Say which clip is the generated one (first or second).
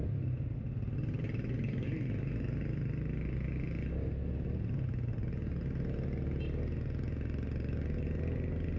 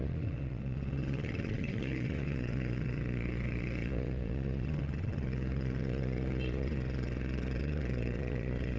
second